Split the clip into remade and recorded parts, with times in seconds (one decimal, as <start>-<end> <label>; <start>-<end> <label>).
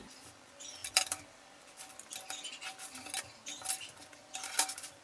0.0-0.8 recorded; 0.8-2.1 remade; 2.1-4.2 recorded; 4.2-5.0 remade